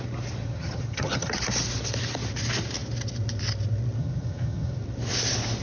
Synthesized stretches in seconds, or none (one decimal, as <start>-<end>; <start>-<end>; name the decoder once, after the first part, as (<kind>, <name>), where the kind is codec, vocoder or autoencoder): 0.4-1.4 (vocoder, HiFi-GAN); 4.0-4.8